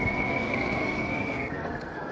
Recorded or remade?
remade